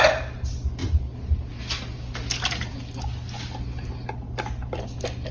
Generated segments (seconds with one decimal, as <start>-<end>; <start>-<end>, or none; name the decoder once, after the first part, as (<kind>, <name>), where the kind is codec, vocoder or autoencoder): none